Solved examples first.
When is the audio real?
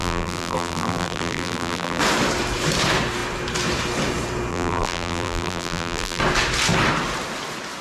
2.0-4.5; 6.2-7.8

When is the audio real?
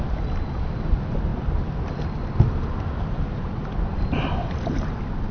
0.0-5.3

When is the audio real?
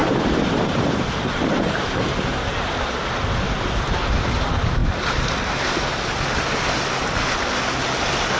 1.9-4.8; 5.6-8.4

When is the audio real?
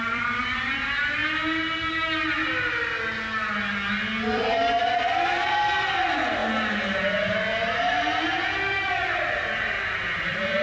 1.2-4.2; 6.4-8.4